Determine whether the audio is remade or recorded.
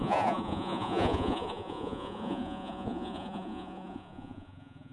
remade